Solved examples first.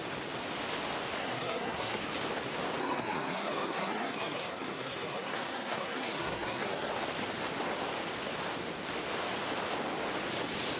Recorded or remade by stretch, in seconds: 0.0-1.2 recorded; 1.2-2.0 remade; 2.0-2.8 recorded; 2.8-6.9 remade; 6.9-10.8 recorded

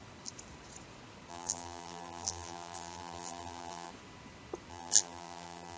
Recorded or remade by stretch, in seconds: 0.0-1.3 recorded; 1.3-3.9 remade; 3.9-4.7 recorded; 4.7-5.8 remade

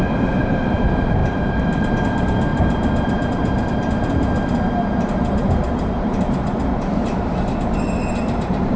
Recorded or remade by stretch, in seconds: 0.0-8.8 remade

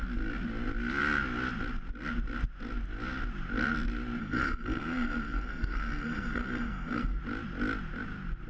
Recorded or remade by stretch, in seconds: 0.0-4.2 recorded; 4.2-7.2 remade; 7.2-8.5 recorded